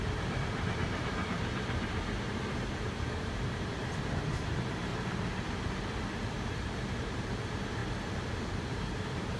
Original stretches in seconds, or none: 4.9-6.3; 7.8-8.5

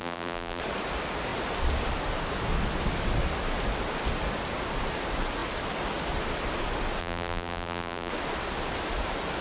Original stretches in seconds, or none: 0.6-7.0; 8.1-9.4

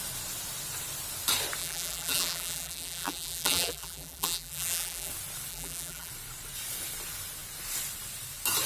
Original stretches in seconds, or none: 0.0-1.6; 5.1-5.5; 6.1-8.7

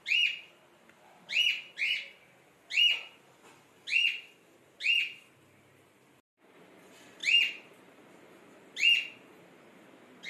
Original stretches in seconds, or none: 0.0-10.3

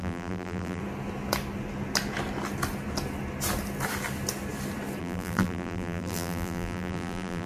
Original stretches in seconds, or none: 0.8-5.0

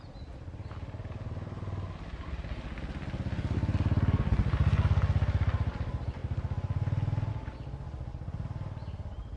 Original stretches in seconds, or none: 0.0-9.4

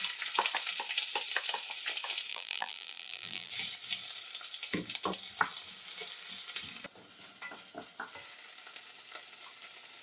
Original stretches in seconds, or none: 0.0-2.3; 3.5-10.0

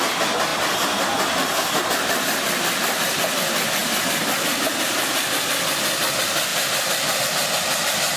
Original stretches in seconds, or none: 0.0-3.8; 4.6-6.5; 7.2-8.2